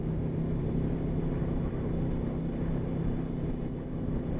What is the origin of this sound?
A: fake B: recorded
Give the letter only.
B